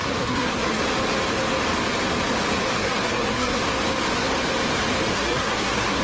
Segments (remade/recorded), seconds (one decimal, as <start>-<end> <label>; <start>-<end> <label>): 0.0-0.8 remade; 0.8-2.8 recorded; 2.8-3.6 remade; 3.6-5.1 recorded; 5.1-6.0 remade